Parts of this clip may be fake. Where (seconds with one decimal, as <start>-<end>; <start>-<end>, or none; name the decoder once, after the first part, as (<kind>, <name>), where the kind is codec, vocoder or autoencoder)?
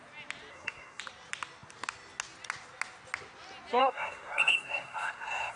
0.5-1.0 (codec, SNAC); 3.8-5.6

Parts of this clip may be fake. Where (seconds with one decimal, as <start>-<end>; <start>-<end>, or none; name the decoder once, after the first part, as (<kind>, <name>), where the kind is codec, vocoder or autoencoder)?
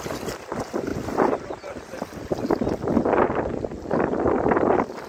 none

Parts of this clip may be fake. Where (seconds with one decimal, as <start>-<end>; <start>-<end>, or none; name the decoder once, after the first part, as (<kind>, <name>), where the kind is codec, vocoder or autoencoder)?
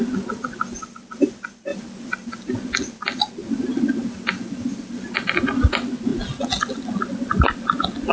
none